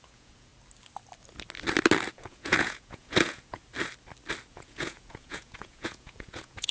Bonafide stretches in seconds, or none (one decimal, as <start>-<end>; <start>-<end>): 0.5-2.1; 3.6-4.5